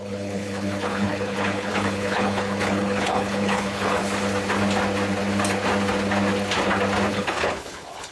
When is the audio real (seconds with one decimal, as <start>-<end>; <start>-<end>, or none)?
4.0-7.1

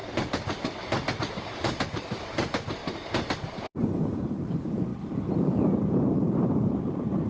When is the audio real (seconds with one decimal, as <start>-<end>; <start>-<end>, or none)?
0.0-1.2; 2.8-3.5

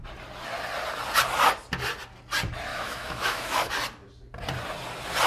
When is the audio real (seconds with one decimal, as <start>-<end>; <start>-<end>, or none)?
0.0-2.7; 3.7-5.3